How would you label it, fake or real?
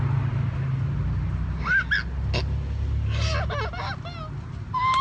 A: real